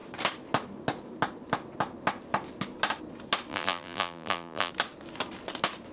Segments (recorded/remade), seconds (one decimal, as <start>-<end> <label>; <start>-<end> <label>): 0.0-3.5 recorded; 3.5-4.7 remade; 4.7-5.9 recorded